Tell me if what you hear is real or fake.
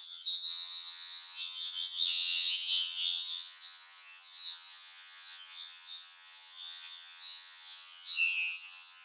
fake